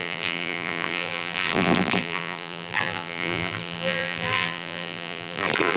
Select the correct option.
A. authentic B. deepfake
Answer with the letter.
B